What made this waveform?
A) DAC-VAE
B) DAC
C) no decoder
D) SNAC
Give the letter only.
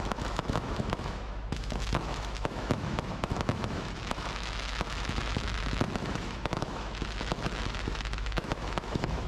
A